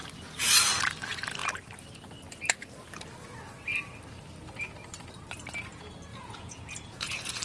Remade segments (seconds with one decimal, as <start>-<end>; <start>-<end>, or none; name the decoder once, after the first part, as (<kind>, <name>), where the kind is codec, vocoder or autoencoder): 6.1-7.4 (vocoder, Vocos)